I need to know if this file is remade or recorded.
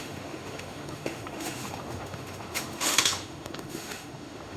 remade